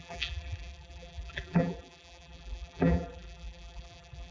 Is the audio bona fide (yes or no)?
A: no